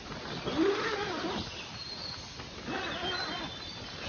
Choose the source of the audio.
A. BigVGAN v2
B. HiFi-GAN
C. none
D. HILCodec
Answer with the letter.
C